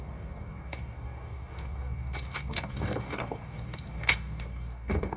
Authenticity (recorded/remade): remade